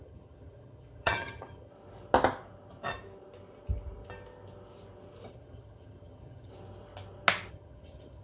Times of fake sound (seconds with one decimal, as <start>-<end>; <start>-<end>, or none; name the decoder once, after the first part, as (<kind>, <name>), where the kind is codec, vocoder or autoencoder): 0.0-1.7 (vocoder, HiFi-GAN); 5.3-6.5; 7.5-8.2